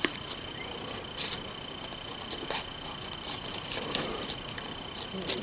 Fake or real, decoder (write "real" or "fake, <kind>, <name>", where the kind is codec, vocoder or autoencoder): real